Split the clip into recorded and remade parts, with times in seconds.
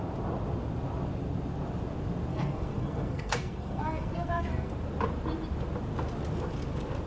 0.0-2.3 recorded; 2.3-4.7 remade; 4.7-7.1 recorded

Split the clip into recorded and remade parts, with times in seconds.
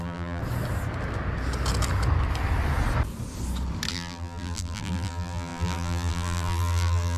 0.0-0.4 remade; 0.4-3.9 recorded; 3.9-7.2 remade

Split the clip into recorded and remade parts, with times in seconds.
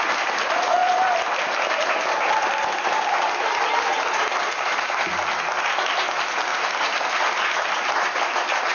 0.0-8.7 recorded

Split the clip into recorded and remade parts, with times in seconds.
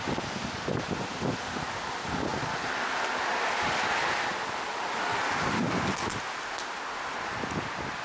0.0-8.0 recorded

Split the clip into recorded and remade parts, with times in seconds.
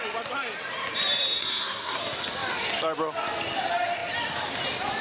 0.0-1.4 recorded; 1.4-2.0 remade; 2.0-5.0 recorded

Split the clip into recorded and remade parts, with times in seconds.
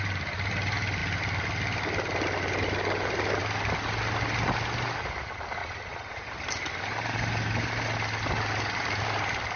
0.0-5.6 recorded; 5.6-6.2 remade; 6.2-9.6 recorded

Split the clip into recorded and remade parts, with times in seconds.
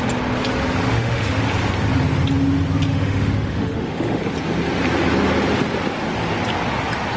0.0-0.9 recorded; 0.9-1.4 remade; 1.4-2.9 recorded; 2.9-4.2 remade; 4.2-7.2 recorded